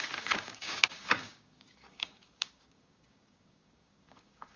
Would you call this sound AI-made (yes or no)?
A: yes